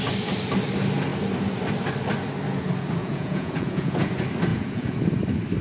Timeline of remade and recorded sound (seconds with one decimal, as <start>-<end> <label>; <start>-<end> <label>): 0.0-3.0 recorded; 3.0-4.1 remade; 4.1-4.5 recorded; 4.5-5.0 remade; 5.0-5.6 recorded